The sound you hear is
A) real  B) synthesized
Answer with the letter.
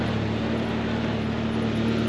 A